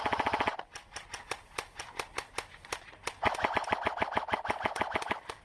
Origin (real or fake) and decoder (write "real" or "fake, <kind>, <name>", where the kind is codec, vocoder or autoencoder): real